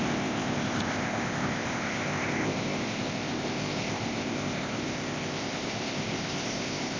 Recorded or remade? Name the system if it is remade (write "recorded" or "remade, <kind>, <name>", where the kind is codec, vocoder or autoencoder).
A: remade, codec, ZipCodec